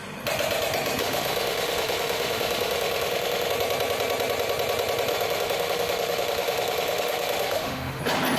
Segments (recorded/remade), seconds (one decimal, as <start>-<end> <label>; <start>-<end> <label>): 0.0-1.0 recorded; 1.0-3.5 remade; 3.5-5.1 recorded; 5.1-8.0 remade; 8.0-8.4 recorded